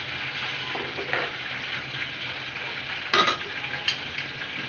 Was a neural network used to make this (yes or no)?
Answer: no